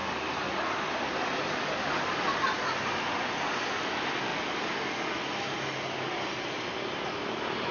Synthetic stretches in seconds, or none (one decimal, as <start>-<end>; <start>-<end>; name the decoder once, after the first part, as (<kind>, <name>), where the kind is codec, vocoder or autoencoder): none